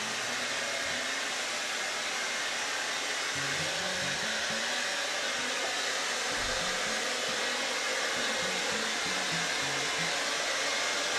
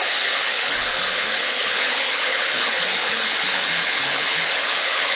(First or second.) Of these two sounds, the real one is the first